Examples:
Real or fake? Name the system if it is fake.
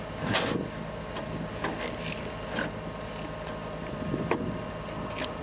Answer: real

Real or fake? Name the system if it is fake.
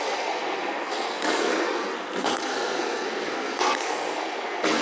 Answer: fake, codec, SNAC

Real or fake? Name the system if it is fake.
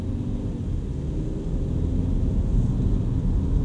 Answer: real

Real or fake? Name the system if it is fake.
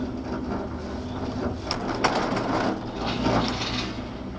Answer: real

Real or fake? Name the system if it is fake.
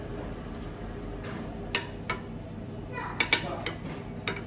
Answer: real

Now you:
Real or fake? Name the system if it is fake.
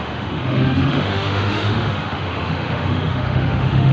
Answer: fake, autoencoder, DAC-VAE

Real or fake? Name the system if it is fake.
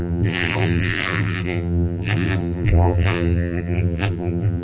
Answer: fake, vocoder, BigVGAN v2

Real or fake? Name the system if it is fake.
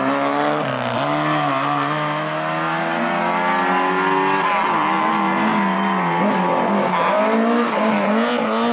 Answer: real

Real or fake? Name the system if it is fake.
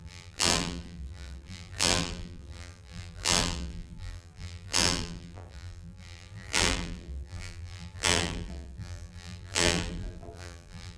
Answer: fake, vocoder, BigVGAN v2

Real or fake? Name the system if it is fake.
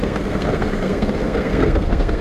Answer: fake, codec, SNAC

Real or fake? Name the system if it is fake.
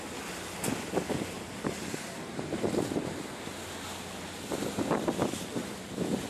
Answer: real